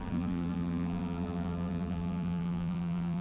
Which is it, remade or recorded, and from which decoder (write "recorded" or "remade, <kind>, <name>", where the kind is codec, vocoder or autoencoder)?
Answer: remade, vocoder, BigVGAN v2